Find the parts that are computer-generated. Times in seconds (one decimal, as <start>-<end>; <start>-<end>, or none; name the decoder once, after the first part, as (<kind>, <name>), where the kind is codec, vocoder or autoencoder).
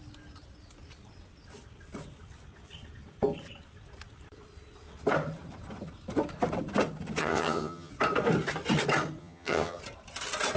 7.2-7.9 (vocoder, HiFi-GAN); 9.2-9.8